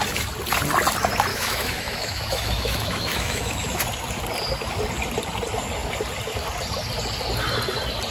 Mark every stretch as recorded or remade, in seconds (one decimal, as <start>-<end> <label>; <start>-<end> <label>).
0.0-1.3 recorded; 1.3-3.8 remade; 3.8-8.1 recorded